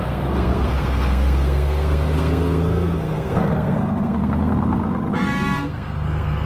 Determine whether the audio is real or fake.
fake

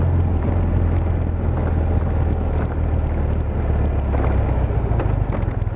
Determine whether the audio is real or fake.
real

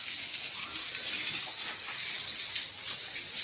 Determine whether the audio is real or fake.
real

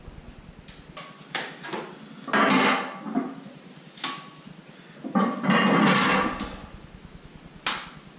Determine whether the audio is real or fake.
real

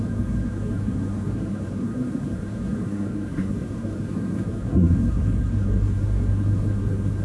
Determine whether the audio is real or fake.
fake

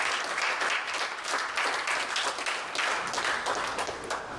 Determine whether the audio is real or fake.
real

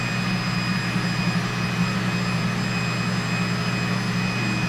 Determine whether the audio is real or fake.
real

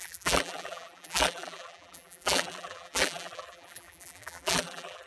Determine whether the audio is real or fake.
fake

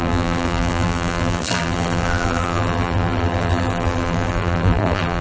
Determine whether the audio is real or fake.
fake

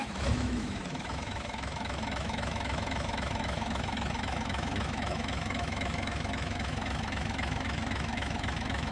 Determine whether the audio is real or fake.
fake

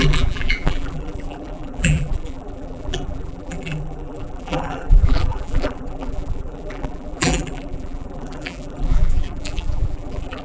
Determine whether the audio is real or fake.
fake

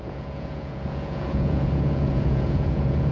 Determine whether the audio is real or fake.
fake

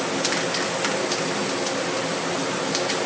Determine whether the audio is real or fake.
real